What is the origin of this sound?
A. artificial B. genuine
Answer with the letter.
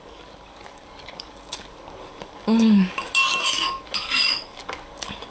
A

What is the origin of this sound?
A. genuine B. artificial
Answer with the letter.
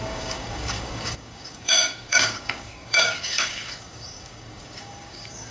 B